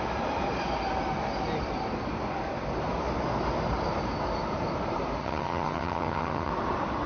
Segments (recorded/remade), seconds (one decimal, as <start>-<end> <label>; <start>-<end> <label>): 0.0-5.2 recorded; 5.2-6.5 remade; 6.5-7.1 recorded